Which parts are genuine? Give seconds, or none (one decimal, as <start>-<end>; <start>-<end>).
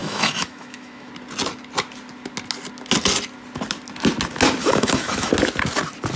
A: 1.1-4.6; 5.3-6.2